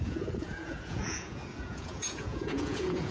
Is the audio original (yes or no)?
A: no